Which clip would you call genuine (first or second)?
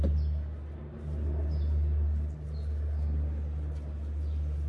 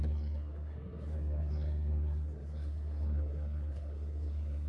first